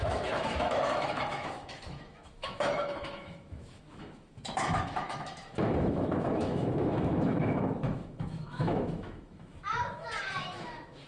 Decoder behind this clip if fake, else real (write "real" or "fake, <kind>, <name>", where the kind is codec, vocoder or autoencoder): fake, autoencoder, DAC-VAE